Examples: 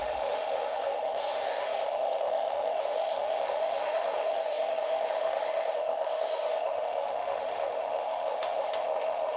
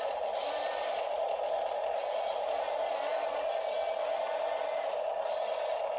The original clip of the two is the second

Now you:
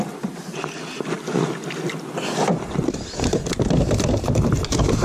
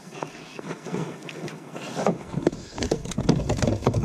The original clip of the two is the first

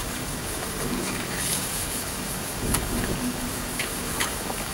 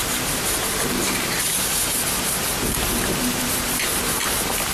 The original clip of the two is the second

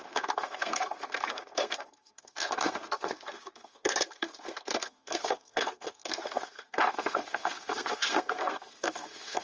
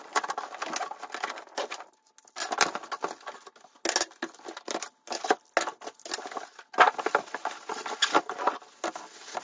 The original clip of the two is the second